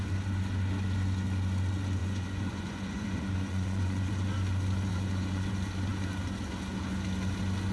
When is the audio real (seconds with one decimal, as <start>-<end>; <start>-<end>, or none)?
0.0-2.0; 4.1-4.9; 5.5-7.7